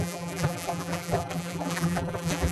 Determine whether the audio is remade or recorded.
remade